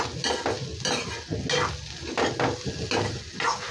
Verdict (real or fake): real